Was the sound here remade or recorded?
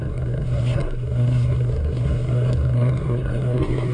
remade